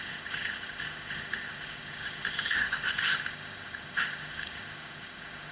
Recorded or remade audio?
remade